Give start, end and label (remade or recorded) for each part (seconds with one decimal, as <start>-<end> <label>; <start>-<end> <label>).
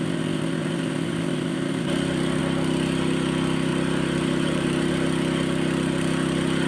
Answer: 0.0-0.6 recorded; 0.6-2.4 remade; 2.4-3.7 recorded; 3.7-4.9 remade; 4.9-6.7 recorded